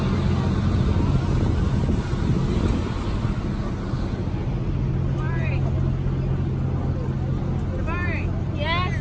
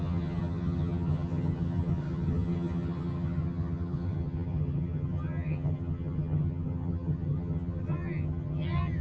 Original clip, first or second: first